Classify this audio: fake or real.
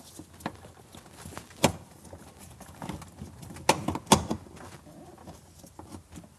real